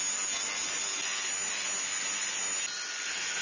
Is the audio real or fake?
real